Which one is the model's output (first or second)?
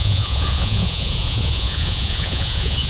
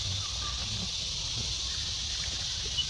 first